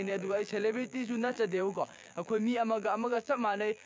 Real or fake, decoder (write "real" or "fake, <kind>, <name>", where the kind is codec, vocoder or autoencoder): fake, vocoder, BigVGAN v2